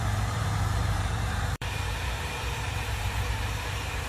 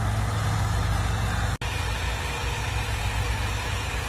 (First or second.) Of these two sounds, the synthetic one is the first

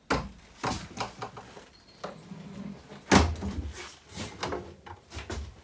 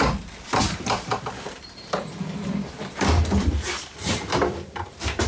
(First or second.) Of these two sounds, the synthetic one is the second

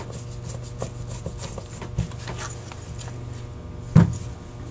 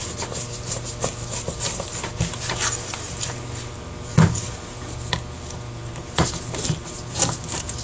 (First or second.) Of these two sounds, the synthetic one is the second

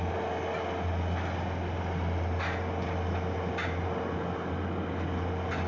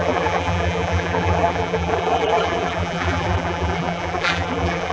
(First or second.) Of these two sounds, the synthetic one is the second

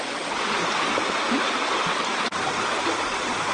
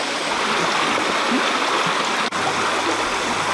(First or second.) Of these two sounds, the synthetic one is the first